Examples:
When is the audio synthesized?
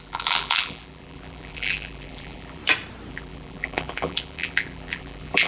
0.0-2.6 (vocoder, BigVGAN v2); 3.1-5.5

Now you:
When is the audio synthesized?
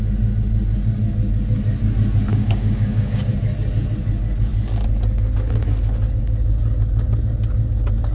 2.3-3.3 (codec, DAC)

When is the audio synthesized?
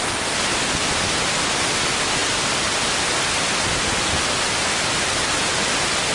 none